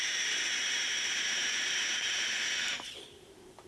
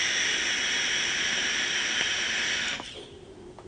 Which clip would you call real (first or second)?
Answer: second